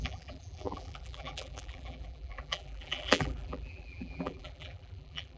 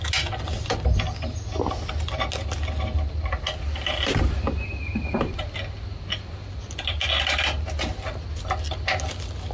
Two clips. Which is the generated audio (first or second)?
first